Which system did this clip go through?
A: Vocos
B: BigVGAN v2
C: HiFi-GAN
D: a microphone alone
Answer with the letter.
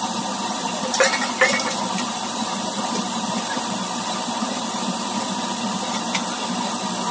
B